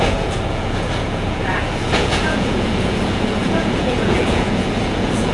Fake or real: fake